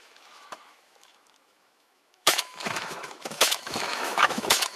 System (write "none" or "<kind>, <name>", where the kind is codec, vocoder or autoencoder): autoencoder, DAC-VAE